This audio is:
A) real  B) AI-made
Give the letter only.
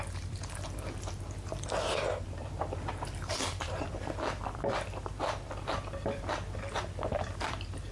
B